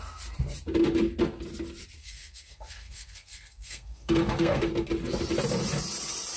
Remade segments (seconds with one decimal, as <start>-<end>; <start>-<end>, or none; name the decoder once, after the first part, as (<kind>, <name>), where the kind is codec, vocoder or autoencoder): 2.0-4.7 (codec, SNAC)